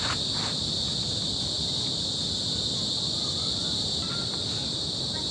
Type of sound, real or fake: real